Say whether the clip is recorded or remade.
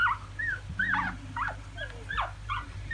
recorded